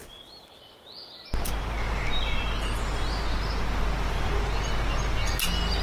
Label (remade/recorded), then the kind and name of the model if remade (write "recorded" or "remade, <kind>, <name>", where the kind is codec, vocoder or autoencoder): recorded